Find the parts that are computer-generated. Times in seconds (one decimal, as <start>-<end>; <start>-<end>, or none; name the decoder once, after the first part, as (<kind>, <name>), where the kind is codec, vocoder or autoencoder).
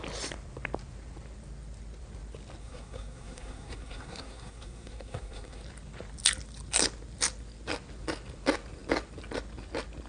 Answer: 2.6-5.6 (codec, SNAC)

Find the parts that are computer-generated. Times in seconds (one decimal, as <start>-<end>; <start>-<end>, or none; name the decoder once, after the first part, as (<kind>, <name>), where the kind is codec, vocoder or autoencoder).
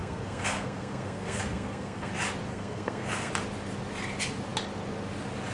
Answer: 0.0-2.1 (codec, SNAC); 2.5-3.3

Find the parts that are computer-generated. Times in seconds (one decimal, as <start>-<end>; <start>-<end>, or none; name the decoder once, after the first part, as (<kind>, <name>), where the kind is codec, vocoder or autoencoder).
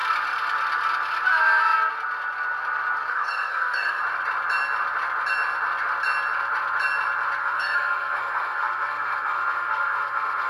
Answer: 3.1-4.0 (codec, SNAC); 7.4-10.5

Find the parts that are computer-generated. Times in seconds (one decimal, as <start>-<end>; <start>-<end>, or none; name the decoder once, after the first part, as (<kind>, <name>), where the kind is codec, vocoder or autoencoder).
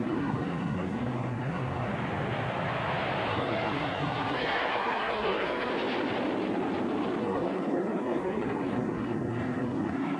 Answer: 0.0-1.9 (codec, SNAC); 3.3-5.7; 7.2-10.2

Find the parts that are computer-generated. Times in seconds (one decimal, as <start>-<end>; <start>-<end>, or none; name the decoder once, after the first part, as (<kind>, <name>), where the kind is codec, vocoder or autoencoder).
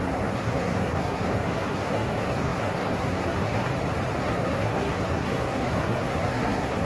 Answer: 0.0-3.7 (codec, SNAC); 4.2-6.9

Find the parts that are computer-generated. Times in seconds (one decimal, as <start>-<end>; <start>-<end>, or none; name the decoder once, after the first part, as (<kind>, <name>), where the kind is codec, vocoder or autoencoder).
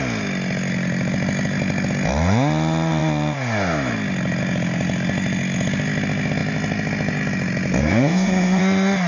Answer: 7.8-8.6 (codec, SNAC)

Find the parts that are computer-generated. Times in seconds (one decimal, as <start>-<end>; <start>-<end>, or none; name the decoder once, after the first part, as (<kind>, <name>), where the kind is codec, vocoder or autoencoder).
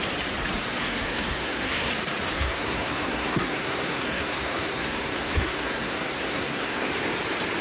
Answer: 0.8-1.9 (codec, SNAC); 2.3-6.9